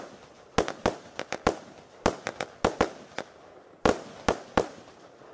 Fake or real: real